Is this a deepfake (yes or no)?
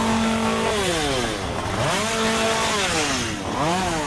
no